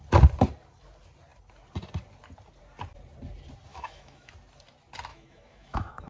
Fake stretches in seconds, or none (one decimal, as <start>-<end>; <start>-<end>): 3.7-4.3; 5.1-6.1